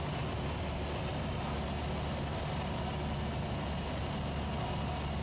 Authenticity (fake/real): real